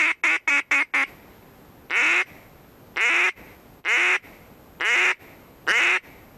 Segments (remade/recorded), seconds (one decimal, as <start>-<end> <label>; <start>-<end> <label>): 0.0-6.4 recorded